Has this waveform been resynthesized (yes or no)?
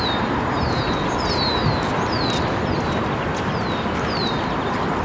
no